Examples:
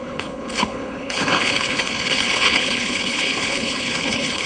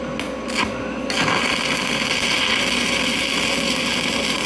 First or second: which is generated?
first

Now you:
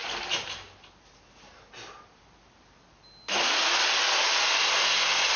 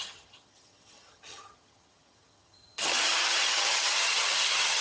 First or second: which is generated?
second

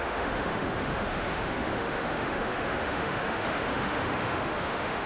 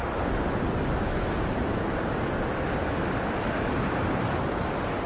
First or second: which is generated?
first